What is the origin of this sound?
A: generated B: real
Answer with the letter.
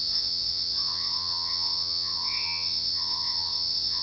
A